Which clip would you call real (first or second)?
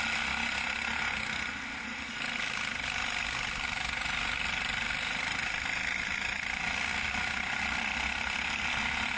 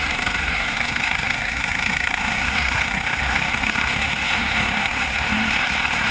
first